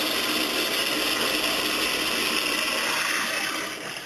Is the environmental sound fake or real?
real